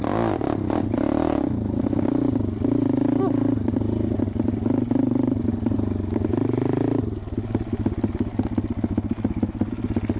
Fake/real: real